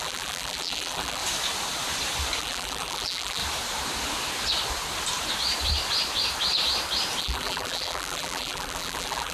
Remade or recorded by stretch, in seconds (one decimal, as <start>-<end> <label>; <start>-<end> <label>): 0.0-1.2 remade; 1.2-2.4 recorded; 2.4-3.4 remade; 3.4-7.2 recorded; 7.2-9.3 remade